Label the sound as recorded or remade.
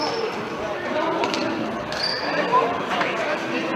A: remade